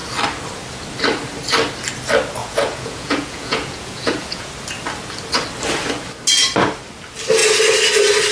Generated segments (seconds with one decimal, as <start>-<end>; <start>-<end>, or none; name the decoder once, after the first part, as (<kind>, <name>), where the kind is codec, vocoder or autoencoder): 2.4-4.5 (vocoder, Vocos)